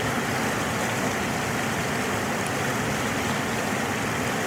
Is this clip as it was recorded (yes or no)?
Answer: yes